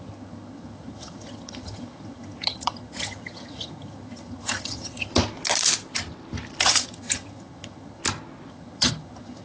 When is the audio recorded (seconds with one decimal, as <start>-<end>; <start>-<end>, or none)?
5.1-6.6; 8.0-8.5